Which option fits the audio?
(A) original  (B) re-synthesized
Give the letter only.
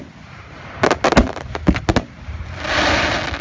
A